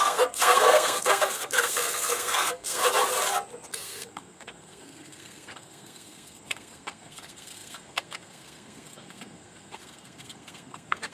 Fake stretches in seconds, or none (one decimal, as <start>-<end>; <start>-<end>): 0.0-2.8; 3.7-11.1